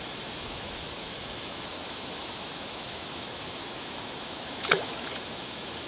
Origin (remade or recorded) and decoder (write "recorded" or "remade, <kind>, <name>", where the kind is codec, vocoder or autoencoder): remade, autoencoder, DAC-VAE